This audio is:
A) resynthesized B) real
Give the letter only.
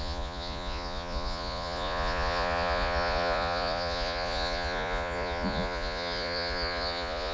A